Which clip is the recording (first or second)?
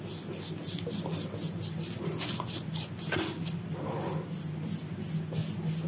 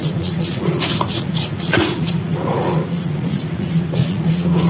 first